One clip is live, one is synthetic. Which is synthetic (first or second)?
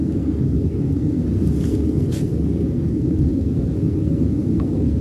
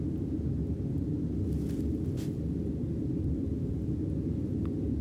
first